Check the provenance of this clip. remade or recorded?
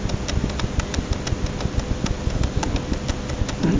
recorded